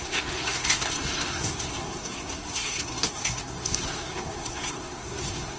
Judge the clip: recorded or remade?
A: remade